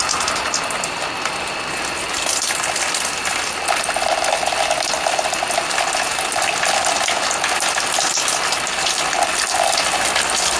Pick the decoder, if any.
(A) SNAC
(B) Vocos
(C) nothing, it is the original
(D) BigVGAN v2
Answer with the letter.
C